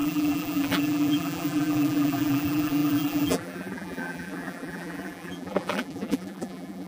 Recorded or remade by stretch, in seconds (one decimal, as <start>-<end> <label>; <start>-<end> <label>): 0.0-6.9 remade

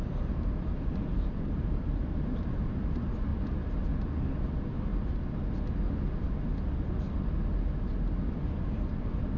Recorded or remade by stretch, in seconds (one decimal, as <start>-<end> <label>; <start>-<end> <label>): 0.0-3.3 remade; 3.3-4.5 recorded; 4.5-4.9 remade; 4.9-8.9 recorded; 8.9-9.4 remade

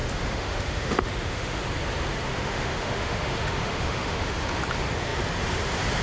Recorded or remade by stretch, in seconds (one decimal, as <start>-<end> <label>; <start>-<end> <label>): 0.0-1.6 remade; 1.6-2.3 recorded; 2.3-4.5 remade; 4.5-6.0 recorded